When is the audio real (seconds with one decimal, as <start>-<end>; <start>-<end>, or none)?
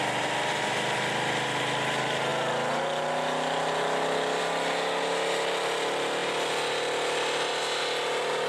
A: 0.0-8.5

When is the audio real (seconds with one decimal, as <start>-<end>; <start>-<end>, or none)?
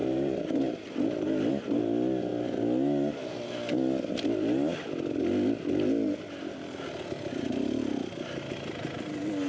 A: 1.8-9.5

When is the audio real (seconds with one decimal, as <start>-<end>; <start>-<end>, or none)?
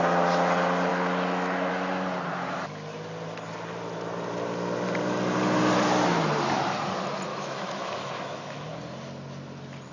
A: 0.0-0.9; 1.7-7.3; 8.6-9.9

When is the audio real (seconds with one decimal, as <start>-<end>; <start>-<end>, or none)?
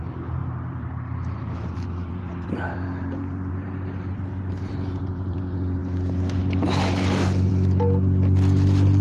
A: 0.0-0.4; 3.5-9.0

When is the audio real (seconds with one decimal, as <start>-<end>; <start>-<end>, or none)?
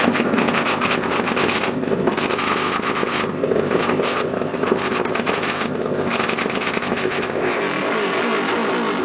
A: 7.6-9.0